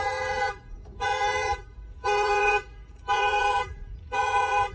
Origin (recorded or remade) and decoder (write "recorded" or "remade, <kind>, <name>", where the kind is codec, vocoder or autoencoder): remade, vocoder, Vocos